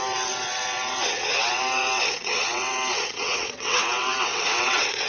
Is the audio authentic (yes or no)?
no